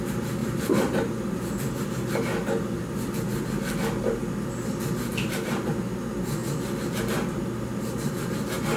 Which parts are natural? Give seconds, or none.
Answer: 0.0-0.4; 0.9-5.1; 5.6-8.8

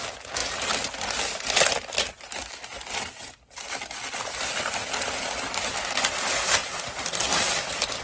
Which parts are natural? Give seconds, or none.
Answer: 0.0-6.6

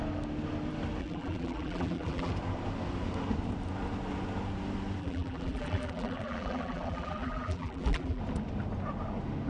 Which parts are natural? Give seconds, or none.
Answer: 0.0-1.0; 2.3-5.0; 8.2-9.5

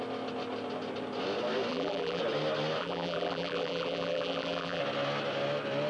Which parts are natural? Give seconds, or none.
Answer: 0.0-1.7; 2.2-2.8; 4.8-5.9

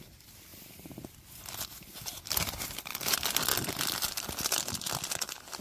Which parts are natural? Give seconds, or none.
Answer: 0.0-5.6

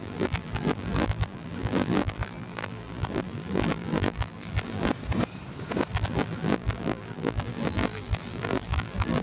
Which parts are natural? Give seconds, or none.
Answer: 4.9-5.9

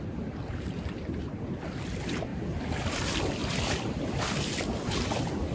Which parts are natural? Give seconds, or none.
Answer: 0.0-3.4; 4.2-5.5

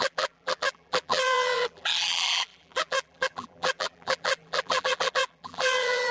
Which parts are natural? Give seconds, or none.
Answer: none